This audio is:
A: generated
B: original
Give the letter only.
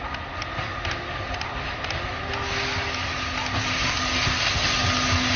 B